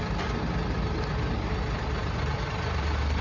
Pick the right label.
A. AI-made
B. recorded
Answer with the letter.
B